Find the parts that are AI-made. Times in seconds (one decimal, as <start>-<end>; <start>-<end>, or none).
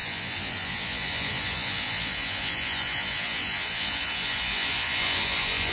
0.0-5.7